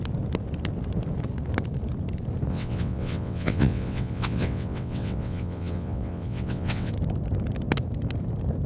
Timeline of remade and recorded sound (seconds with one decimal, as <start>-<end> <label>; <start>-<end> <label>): 0.0-2.5 recorded; 2.5-6.9 remade; 6.9-8.7 recorded